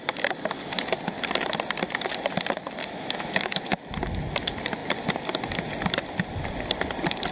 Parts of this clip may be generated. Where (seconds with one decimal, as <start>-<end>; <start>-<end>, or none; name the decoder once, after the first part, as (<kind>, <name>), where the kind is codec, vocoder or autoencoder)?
2.8-3.8 (autoencoder, DAC-VAE)